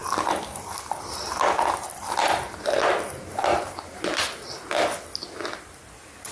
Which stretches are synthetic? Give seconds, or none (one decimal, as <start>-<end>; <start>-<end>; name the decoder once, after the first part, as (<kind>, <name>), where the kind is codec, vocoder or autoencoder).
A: 2.2-4.5 (vocoder, BigVGAN v2)